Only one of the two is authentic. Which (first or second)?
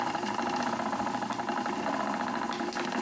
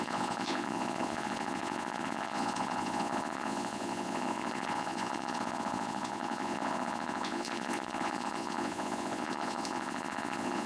first